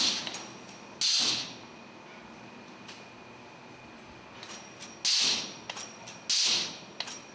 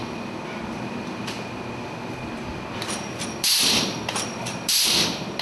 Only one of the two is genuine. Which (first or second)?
first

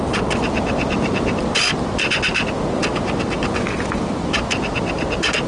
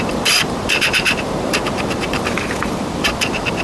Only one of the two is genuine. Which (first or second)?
first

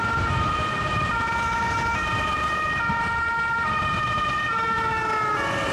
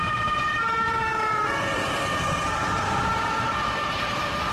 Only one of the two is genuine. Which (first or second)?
first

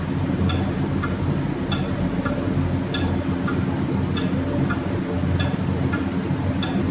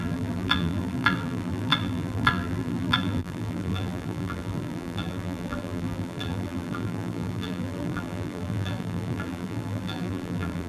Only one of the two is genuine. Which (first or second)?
first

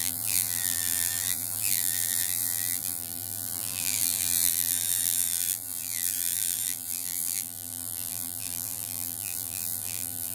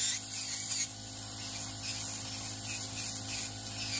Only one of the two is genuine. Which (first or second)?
second